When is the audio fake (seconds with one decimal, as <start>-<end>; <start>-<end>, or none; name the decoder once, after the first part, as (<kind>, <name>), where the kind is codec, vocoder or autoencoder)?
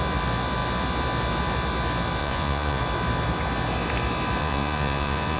2.2-2.8 (vocoder, Vocos); 4.4-5.4